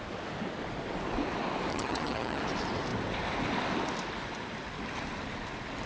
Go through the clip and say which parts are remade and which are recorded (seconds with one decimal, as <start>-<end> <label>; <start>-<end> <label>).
0.0-1.7 recorded; 1.7-2.4 remade; 2.4-5.9 recorded